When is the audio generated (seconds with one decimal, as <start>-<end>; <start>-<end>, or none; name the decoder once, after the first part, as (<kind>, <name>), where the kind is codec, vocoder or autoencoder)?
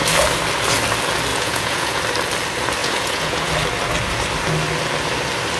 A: 1.3-2.0 (vocoder, Vocos); 2.8-3.5